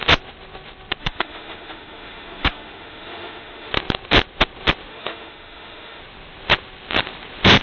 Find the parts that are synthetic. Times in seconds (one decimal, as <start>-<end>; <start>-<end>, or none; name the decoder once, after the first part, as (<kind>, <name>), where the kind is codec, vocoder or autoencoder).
1.0-3.7 (autoencoder, DAC-VAE); 4.9-6.0